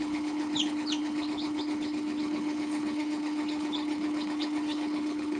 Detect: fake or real fake